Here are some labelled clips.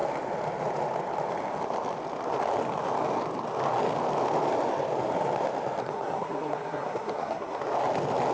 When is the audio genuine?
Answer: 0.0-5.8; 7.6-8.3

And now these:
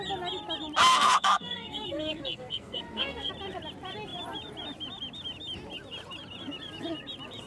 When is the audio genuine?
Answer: 0.0-0.9; 3.3-7.5

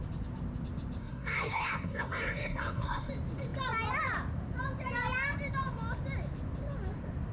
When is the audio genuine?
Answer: 0.0-1.0; 3.1-7.3

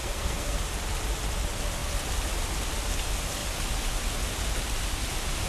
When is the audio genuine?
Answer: 0.6-5.5

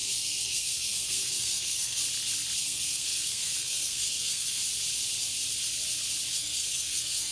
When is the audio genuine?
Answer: 2.0-2.6; 4.6-6.3

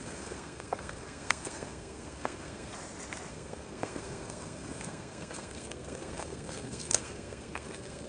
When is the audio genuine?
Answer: 2.7-3.3